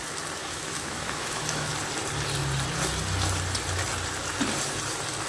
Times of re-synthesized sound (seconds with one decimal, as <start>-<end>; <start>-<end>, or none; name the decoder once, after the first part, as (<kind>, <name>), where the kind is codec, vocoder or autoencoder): 0.4-1.7 (autoencoder, DAC-VAE)